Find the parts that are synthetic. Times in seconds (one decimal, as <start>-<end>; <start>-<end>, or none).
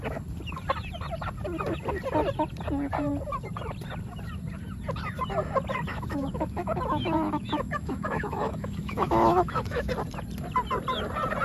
5.9-9.9